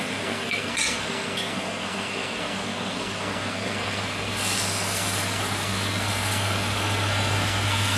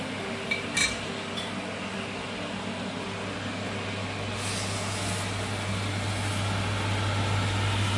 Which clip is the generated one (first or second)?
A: first